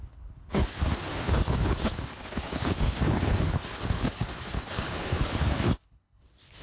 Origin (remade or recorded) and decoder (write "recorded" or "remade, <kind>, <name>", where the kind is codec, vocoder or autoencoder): remade, codec, HILCodec